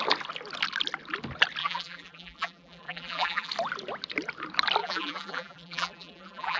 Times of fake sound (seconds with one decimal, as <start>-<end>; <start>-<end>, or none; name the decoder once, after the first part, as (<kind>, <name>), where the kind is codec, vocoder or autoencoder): 1.6-3.5 (vocoder, BigVGAN v2); 4.8-6.6